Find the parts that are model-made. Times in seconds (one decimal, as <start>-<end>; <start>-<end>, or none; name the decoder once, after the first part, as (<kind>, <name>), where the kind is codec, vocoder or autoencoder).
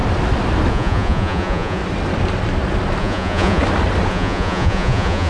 0.7-1.8 (vocoder, Vocos); 3.0-3.6; 4.1-5.3